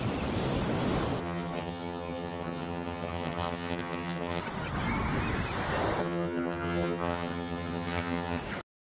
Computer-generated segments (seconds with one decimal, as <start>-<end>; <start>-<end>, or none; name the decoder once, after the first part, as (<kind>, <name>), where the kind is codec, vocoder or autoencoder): 1.2-4.4 (vocoder, HiFi-GAN); 6.0-8.4